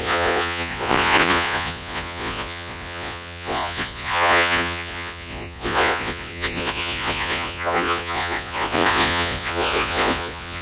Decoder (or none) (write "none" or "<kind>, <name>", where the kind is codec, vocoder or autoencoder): vocoder, Vocos